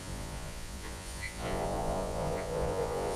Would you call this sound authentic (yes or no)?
no